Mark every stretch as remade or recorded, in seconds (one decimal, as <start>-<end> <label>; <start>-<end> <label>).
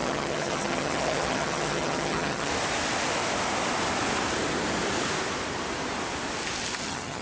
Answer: 0.0-2.5 remade; 2.5-6.8 recorded; 6.8-7.2 remade